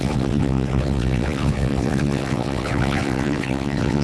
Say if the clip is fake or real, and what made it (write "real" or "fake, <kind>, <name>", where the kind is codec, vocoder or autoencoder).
fake, vocoder, WaveNeXt